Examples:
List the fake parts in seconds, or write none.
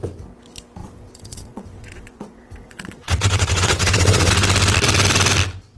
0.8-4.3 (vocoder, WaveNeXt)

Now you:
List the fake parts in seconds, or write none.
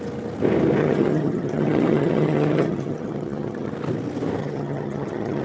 0.8-3.7 (vocoder, HiFi-GAN); 4.4-5.4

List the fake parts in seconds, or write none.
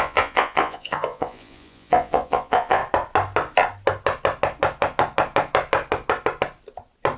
0.0-2.8 (vocoder, Vocos)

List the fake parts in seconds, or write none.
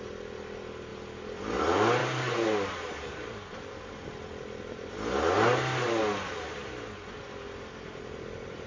2.0-3.9 (vocoder, BigVGAN v2)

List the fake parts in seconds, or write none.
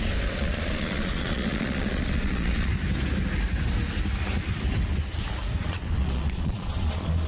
0.0-2.7 (vocoder, Vocos); 5.6-7.3